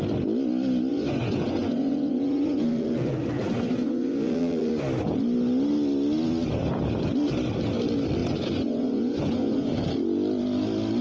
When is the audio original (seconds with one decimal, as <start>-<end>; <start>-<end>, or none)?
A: 0.0-0.9; 4.7-8.2; 9.8-11.0